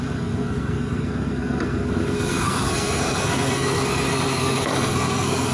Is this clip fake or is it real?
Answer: fake